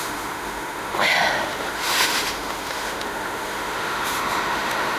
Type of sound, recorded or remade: remade